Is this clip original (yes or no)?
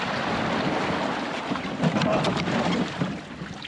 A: yes